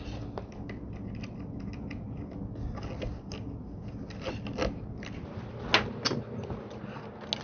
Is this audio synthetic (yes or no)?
no